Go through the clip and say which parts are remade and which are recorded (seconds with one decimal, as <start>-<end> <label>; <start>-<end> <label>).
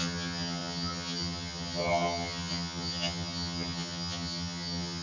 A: 0.0-5.0 remade